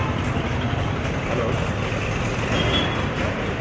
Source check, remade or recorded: recorded